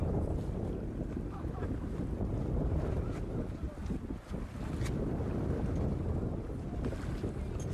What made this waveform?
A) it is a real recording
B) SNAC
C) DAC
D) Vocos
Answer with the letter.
A